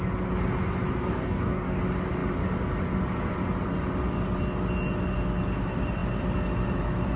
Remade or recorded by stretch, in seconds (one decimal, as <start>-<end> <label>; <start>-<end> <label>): 0.0-1.0 recorded; 1.0-1.8 remade; 1.8-7.2 recorded